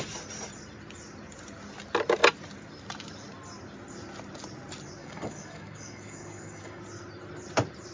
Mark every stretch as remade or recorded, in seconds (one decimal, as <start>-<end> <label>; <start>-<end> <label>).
0.0-5.0 recorded; 5.0-6.8 remade; 6.8-7.9 recorded